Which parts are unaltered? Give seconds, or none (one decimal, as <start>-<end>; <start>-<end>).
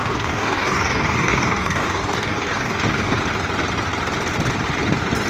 3.2-5.3